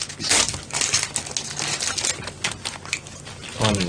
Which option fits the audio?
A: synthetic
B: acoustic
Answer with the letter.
B